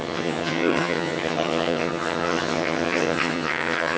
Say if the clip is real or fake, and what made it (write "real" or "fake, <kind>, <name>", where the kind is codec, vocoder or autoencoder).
fake, vocoder, HiFi-GAN